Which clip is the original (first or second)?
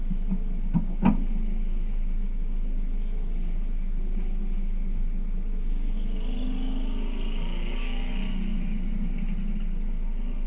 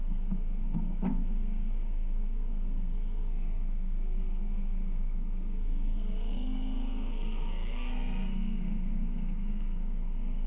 first